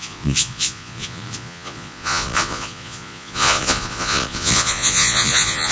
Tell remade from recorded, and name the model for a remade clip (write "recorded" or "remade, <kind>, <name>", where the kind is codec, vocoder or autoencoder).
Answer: remade, vocoder, Vocos